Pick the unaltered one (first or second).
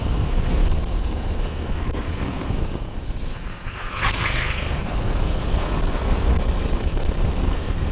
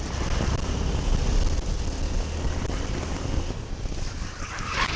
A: second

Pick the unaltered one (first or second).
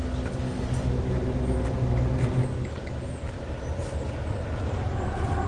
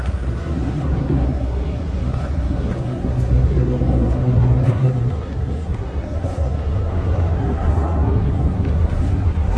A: first